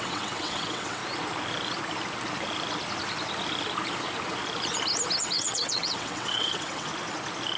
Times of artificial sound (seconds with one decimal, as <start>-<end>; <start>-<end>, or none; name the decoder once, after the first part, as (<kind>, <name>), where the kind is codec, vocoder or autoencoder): 0.0-1.0 (vocoder, WaveNeXt); 5.2-6.9